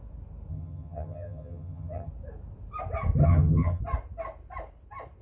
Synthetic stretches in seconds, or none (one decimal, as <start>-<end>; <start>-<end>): 0.5-2.1; 3.2-3.8